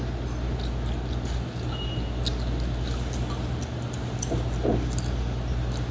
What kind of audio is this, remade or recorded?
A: recorded